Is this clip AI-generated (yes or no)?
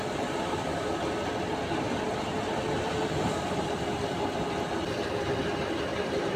no